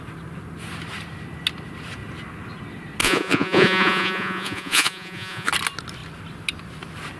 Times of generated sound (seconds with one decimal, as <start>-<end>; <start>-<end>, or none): 3.0-5.5